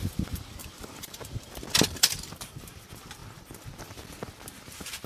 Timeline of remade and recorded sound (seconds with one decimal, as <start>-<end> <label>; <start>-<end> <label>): 0.0-3.2 remade; 3.2-5.1 recorded